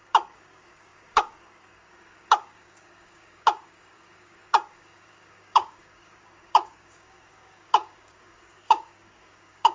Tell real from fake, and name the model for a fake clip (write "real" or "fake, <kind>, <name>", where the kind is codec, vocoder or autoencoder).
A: fake, codec, DAC